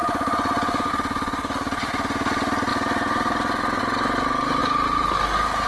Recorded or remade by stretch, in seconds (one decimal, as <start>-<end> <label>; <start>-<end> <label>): 0.0-0.9 remade; 0.9-5.7 recorded